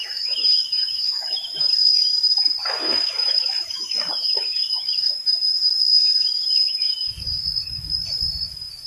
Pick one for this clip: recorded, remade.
remade